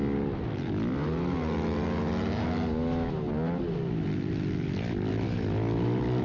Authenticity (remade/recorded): recorded